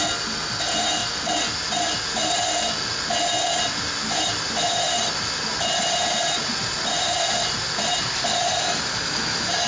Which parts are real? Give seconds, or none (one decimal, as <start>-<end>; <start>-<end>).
0.0-4.0; 8.8-9.7